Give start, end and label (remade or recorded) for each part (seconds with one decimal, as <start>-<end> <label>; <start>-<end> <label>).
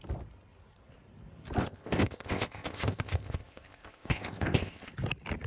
0.0-1.6 recorded; 1.6-4.9 remade; 4.9-5.5 recorded